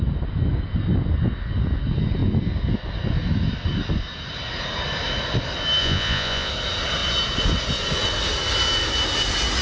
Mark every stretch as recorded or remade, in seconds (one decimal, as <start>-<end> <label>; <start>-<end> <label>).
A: 0.0-5.8 recorded; 5.8-6.5 remade; 6.5-9.6 recorded